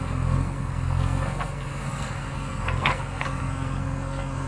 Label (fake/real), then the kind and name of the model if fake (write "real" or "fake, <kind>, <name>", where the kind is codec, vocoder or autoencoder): fake, codec, SNAC